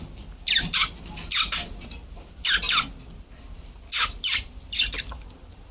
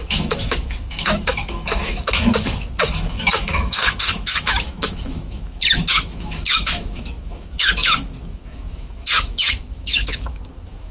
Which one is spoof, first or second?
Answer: second